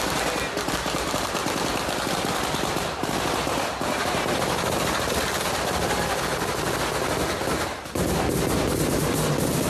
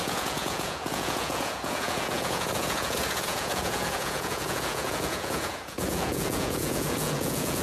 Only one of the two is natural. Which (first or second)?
first